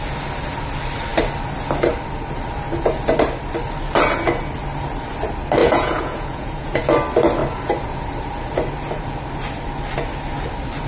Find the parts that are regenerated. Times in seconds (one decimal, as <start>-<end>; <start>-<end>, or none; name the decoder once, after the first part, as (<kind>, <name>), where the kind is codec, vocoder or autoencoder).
5.6-6.8 (vocoder, Vocos)

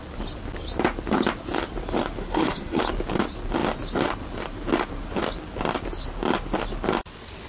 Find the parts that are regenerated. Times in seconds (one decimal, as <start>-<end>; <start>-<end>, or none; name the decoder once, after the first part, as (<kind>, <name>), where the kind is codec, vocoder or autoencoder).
2.2-2.8 (codec, SNAC)

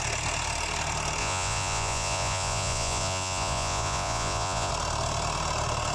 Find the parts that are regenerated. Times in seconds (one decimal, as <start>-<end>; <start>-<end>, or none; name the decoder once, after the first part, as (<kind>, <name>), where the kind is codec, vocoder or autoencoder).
1.2-4.7 (vocoder, Vocos)

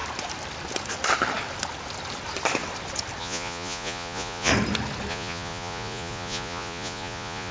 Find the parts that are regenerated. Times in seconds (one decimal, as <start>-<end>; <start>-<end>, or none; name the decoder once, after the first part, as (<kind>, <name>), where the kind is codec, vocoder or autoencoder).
3.2-4.5 (vocoder, Vocos); 5.1-7.5

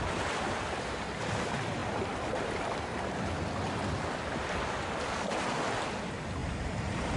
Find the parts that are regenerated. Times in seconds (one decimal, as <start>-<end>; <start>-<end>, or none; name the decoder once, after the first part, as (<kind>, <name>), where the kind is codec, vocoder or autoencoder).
6.4-7.2 (vocoder, BigVGAN v2)

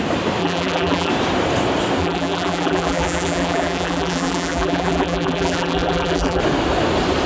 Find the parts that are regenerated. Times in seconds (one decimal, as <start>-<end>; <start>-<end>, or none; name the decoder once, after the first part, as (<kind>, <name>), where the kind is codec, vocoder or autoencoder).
0.4-1.1 (vocoder, BigVGAN v2); 2.0-6.4

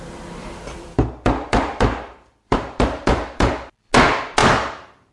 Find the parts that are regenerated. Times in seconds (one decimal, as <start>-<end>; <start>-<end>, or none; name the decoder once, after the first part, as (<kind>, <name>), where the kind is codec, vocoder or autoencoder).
0.4-3.5 (vocoder, BigVGAN v2); 4.4-5.1